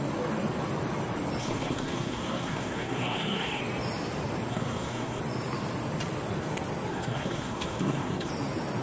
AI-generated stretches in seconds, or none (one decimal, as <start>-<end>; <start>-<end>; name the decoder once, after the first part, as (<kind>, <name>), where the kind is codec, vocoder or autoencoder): 1.4-3.6 (codec, SNAC); 4.5-5.2; 6.9-8.3